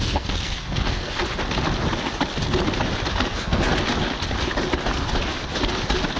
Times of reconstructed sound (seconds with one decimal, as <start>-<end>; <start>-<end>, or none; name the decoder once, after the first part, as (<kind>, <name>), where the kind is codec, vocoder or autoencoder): 0.0-1.2 (codec, SNAC); 3.1-3.7